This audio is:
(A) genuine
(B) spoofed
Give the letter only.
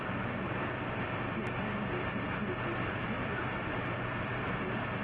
B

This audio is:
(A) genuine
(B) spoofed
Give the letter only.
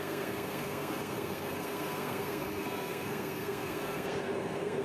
B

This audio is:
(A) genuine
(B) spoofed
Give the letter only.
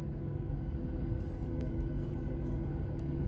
B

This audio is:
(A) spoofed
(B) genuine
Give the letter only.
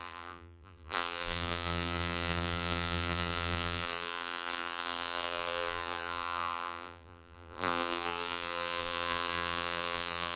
A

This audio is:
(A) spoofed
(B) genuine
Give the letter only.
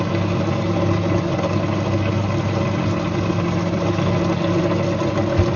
B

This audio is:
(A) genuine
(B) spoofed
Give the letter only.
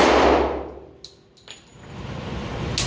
A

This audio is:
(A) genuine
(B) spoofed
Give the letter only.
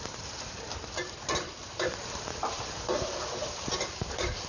B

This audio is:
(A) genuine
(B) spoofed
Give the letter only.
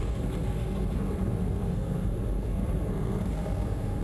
B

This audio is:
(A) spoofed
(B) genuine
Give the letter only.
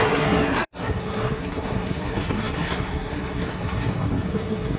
A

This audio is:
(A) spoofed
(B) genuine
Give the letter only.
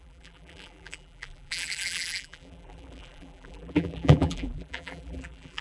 A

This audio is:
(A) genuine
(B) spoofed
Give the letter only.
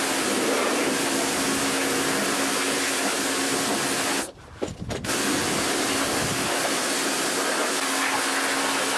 A